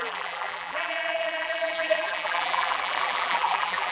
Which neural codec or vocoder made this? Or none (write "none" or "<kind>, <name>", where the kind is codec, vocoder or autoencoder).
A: vocoder, BigVGAN v2